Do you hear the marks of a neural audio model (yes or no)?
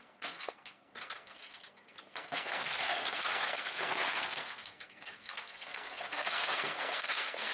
yes